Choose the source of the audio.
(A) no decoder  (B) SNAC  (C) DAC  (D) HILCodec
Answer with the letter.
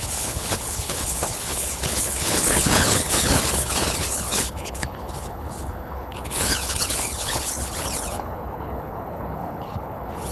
D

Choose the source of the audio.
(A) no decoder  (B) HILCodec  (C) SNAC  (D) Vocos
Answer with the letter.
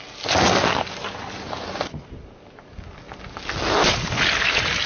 A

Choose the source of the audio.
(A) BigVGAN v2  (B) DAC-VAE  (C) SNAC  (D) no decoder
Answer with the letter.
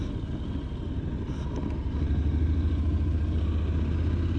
D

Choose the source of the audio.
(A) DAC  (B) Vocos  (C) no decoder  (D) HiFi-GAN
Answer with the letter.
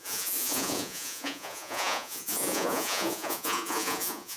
B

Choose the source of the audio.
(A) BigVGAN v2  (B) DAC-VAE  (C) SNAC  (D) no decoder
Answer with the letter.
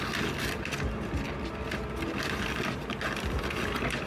D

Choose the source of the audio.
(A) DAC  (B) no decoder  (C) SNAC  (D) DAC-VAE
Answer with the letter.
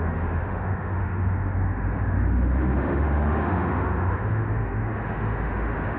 D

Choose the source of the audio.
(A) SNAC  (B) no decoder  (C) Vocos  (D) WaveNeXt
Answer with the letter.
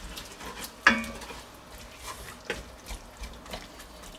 B